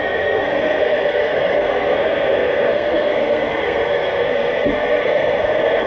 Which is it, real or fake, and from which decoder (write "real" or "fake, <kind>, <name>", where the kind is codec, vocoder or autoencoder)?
fake, codec, SNAC